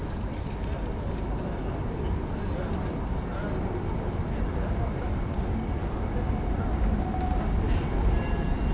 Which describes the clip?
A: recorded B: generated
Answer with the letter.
A